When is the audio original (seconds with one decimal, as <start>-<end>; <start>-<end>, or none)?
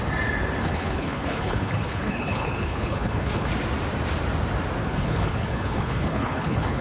0.0-0.6; 3.5-4.8